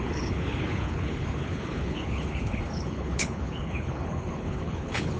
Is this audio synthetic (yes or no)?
yes